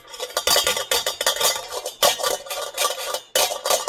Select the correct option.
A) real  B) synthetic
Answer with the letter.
A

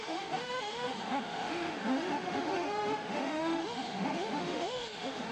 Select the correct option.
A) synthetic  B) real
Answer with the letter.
A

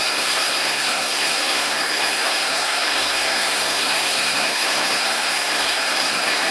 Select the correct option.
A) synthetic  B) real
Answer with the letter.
A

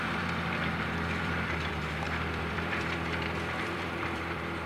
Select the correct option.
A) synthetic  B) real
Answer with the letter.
A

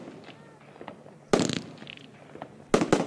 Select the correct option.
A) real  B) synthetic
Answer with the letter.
A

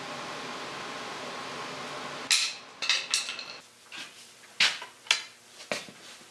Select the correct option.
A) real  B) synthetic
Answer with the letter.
A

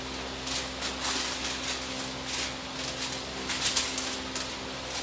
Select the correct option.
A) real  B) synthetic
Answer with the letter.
A